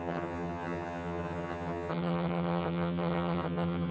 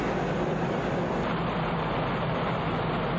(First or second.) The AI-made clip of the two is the first